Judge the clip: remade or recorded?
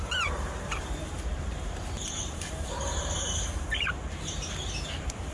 remade